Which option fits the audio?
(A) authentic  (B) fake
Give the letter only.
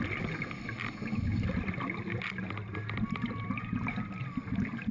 A